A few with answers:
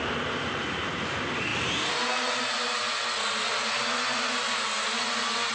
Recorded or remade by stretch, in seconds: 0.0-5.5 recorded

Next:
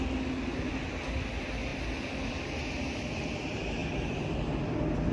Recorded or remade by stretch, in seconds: 0.0-5.1 recorded

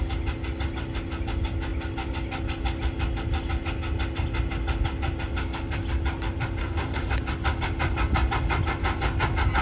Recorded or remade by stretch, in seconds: 0.0-6.6 recorded; 6.6-7.1 remade; 7.1-9.6 recorded

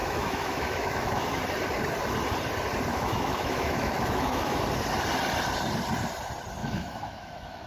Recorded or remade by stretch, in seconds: 0.0-1.4 remade; 1.4-2.9 recorded; 2.9-4.6 remade; 4.6-6.6 recorded; 6.6-7.7 remade

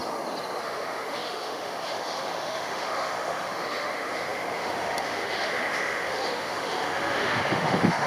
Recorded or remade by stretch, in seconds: 0.0-0.6 recorded; 0.6-8.1 remade